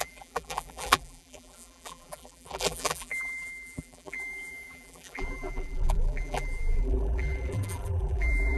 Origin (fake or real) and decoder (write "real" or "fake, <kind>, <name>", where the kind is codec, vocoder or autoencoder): fake, vocoder, BigVGAN v2